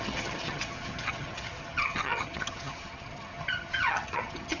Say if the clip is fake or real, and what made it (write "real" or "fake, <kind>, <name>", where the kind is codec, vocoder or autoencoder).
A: fake, vocoder, HiFi-GAN